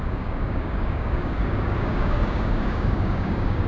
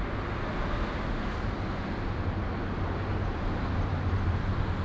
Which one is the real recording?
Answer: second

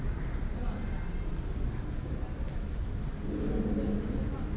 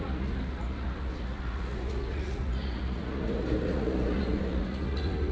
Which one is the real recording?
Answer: first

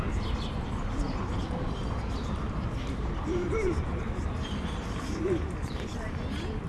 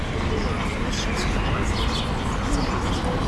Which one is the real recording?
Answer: second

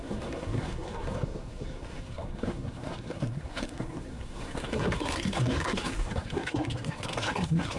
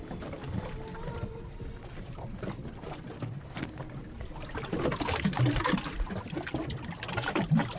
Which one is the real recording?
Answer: second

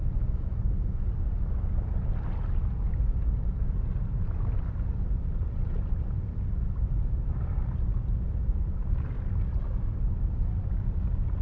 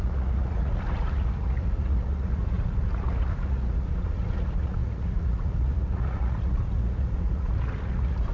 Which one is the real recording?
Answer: first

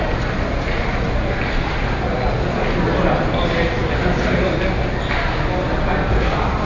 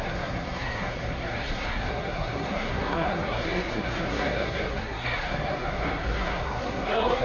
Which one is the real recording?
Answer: first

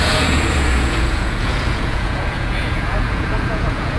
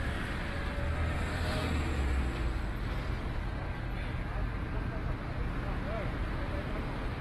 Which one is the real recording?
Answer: second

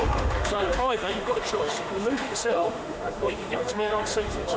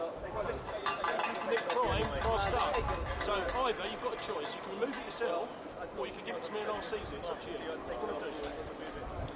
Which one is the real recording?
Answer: second